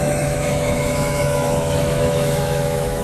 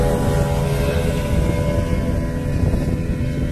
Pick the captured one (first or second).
second